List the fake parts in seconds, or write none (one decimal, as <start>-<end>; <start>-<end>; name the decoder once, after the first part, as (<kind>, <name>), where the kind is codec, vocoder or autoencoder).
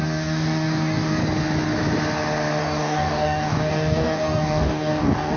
0.0-1.2 (codec, DAC); 2.6-5.4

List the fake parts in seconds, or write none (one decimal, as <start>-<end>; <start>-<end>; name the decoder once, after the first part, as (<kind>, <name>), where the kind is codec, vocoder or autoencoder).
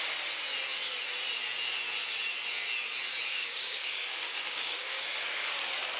3.3-5.0 (codec, DAC)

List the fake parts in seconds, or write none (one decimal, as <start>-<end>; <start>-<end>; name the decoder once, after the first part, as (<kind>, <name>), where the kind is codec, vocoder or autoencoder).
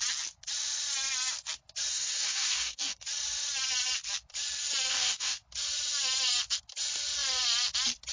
1.9-3.0 (codec, DAC); 4.9-5.4